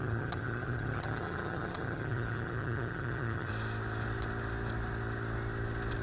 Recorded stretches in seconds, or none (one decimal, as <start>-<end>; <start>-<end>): 3.5-6.0